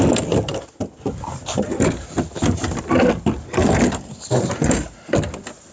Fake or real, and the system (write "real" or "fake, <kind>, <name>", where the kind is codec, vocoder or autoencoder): real